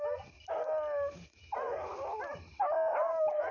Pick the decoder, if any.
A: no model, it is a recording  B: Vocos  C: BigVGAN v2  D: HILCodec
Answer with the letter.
A